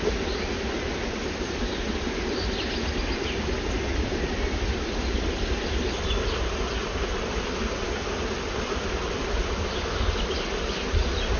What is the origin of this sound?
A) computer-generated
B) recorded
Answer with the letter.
B